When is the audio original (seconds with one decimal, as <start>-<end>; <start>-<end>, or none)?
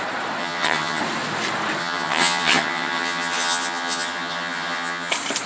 0.0-0.4; 1.0-1.8; 5.1-5.5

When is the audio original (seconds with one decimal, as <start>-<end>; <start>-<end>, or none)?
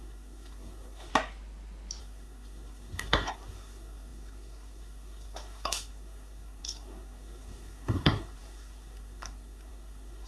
1.1-2.0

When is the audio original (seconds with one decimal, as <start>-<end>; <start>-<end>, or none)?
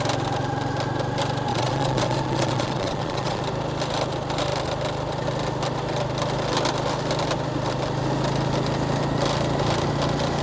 0.0-1.5; 3.4-10.4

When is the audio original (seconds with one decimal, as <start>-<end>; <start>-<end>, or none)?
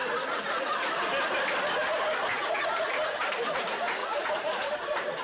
0.6-2.3; 2.9-4.0; 4.7-5.2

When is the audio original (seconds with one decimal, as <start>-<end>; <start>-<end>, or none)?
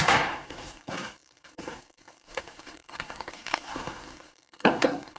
none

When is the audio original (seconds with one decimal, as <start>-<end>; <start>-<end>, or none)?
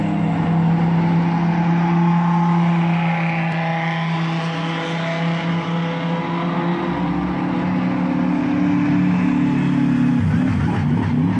0.0-11.4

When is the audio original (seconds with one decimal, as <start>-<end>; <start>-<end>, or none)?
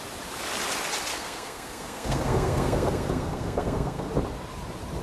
0.0-1.1; 4.1-5.0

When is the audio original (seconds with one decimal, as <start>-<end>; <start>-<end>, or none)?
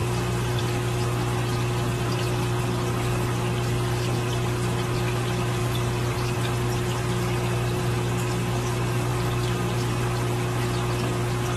0.0-11.6